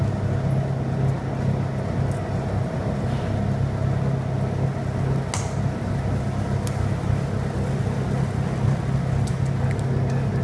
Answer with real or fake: real